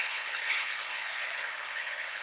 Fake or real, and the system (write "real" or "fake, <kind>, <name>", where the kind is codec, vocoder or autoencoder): fake, codec, HILCodec